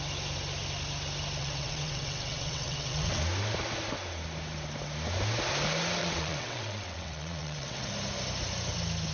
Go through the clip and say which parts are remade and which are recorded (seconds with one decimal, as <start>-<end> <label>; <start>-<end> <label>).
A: 0.0-1.4 recorded; 1.4-3.2 remade; 3.2-6.0 recorded; 6.0-7.9 remade; 7.9-9.1 recorded